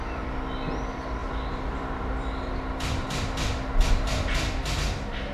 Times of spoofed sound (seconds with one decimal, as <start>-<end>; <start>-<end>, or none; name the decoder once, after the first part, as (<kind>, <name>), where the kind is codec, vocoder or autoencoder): 1.2-3.9 (vocoder, BigVGAN v2)